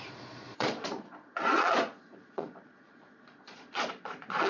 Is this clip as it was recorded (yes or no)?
no